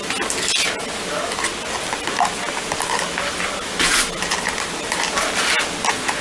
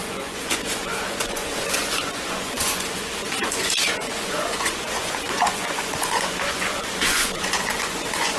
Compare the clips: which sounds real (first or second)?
first